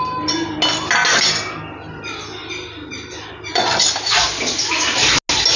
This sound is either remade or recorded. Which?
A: recorded